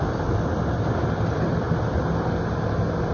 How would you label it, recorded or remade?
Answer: recorded